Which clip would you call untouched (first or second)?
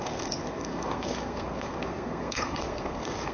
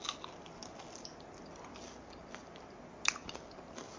second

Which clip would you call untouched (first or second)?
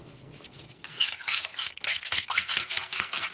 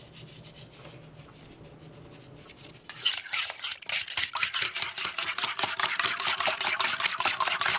second